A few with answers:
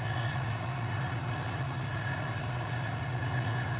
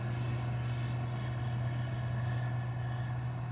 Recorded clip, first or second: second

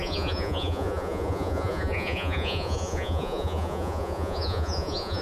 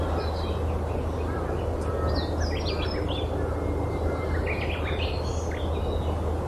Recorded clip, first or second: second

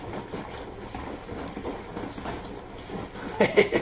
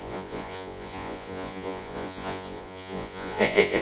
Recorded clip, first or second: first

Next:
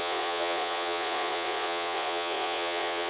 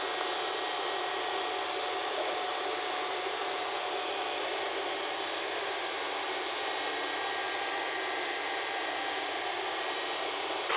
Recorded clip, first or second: second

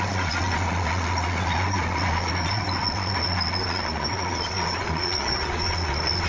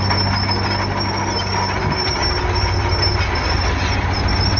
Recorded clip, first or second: second